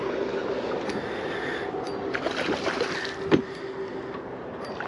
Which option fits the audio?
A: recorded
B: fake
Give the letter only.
A